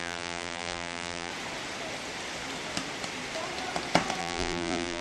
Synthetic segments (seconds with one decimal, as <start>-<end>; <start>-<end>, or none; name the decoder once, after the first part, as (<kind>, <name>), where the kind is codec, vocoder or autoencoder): 0.0-1.3 (vocoder, BigVGAN v2); 4.2-5.0